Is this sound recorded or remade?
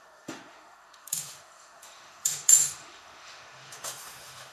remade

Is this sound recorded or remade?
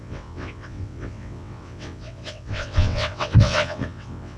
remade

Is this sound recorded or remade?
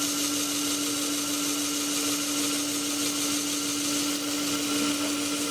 recorded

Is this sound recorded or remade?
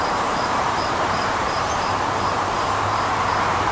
remade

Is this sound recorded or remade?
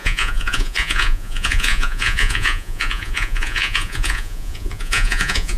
remade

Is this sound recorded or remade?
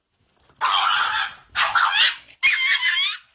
recorded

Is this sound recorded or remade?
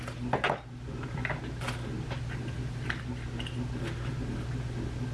recorded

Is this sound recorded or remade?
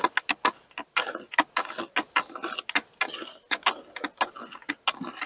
recorded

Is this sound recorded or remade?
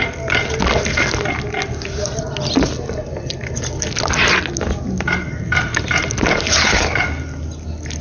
recorded